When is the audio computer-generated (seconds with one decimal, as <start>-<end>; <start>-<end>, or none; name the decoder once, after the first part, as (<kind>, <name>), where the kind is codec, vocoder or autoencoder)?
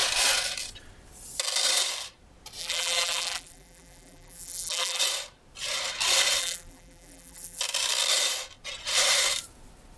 2.6-5.0 (vocoder, BigVGAN v2); 6.4-7.6